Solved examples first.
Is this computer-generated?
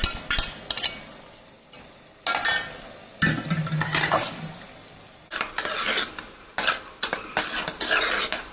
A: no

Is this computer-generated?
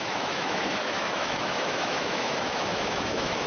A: yes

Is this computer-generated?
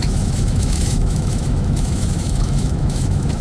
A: yes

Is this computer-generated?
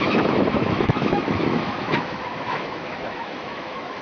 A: yes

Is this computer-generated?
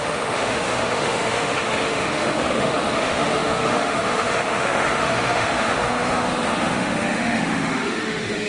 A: yes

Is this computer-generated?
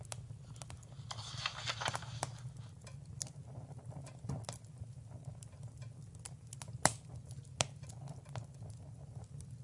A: no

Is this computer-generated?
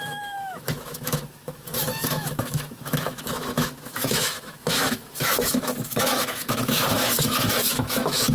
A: yes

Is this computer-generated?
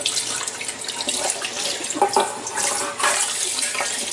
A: no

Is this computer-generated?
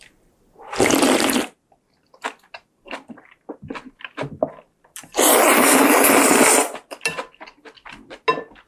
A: no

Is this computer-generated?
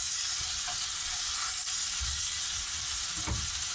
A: no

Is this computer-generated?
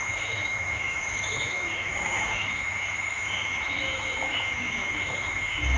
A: yes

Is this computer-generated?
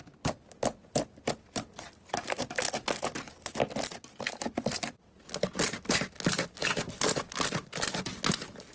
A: no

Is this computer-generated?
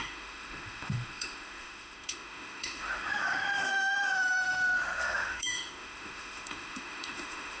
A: yes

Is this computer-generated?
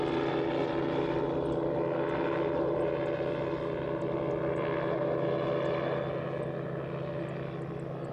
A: no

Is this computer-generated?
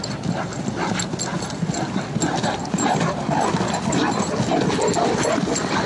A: no